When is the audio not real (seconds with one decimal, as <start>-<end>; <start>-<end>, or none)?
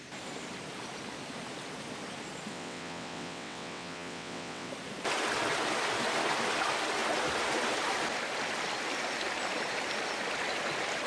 2.5-4.7